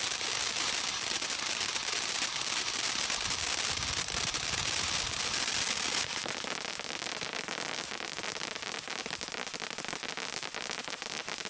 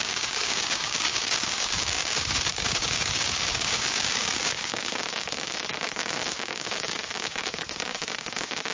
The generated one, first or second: second